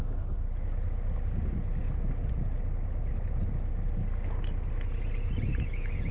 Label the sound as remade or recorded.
recorded